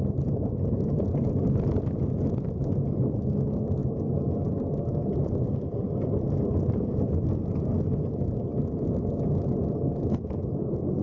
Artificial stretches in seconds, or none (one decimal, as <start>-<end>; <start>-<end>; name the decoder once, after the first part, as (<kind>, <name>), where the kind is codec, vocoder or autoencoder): 3.8-7.8 (vocoder, BigVGAN v2)